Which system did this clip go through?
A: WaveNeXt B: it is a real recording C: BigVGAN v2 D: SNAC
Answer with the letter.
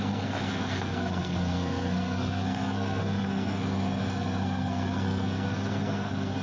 D